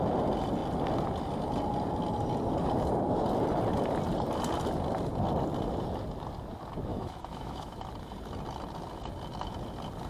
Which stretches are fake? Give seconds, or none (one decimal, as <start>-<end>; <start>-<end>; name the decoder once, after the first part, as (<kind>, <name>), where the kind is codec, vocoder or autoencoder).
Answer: 6.9-7.8 (autoencoder, DAC-VAE)